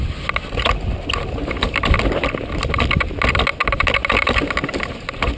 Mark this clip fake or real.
real